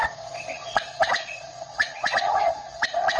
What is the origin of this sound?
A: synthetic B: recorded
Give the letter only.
A